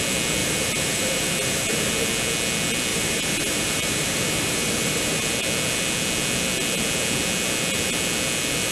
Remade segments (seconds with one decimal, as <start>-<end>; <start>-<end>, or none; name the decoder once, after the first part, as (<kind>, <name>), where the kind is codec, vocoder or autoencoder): 0.4-1.9 (vocoder, BigVGAN v2); 2.9-5.2